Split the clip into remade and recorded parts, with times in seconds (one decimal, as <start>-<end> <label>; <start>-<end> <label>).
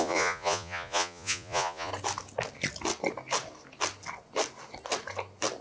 0.0-1.9 remade; 1.9-5.6 recorded